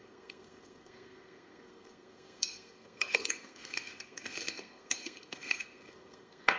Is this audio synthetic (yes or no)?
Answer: yes